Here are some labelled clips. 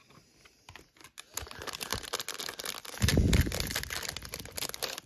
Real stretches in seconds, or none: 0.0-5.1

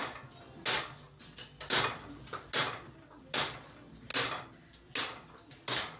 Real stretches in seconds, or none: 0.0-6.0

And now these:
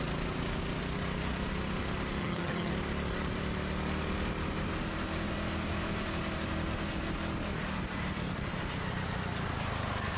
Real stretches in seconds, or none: 0.0-2.2; 2.7-10.2

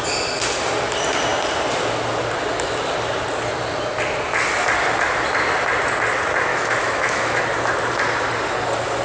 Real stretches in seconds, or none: 0.0-6.5; 7.4-9.0